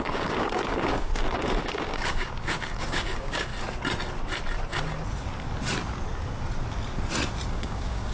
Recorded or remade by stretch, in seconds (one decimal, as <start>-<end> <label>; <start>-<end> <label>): 0.0-3.5 remade; 3.5-7.5 recorded; 7.5-8.1 remade